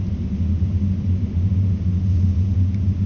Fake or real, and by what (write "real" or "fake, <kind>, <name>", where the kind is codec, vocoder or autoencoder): real